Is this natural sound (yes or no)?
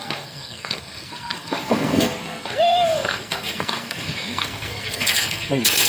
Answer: no